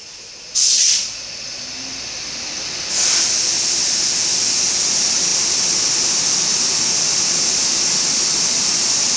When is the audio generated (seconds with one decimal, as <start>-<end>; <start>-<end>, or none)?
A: none